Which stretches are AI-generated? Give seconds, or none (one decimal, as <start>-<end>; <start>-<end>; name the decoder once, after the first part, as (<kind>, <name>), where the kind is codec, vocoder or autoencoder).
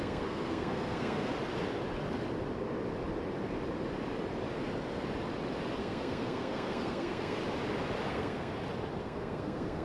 0.0-1.3 (codec, SNAC); 5.8-7.4; 8.1-8.5; 9.0-9.8